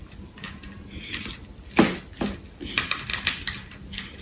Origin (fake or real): real